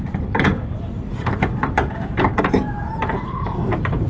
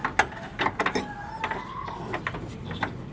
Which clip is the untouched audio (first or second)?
second